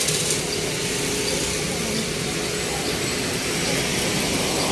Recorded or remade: recorded